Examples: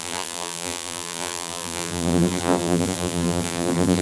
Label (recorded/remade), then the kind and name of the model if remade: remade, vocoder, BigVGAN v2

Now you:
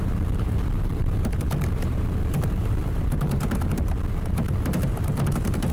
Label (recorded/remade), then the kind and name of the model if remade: remade, vocoder, BigVGAN v2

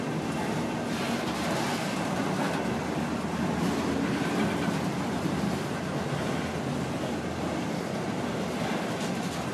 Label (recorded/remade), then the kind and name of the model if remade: recorded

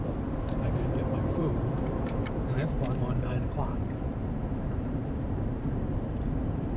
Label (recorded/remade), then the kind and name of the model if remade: remade, vocoder, BigVGAN v2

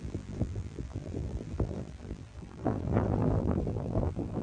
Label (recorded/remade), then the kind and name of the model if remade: remade, vocoder, BigVGAN v2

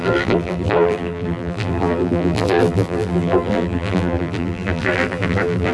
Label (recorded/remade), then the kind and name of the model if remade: remade, vocoder, BigVGAN v2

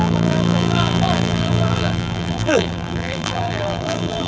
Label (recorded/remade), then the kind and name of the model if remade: remade, vocoder, BigVGAN v2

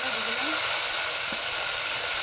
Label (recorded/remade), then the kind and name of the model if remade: recorded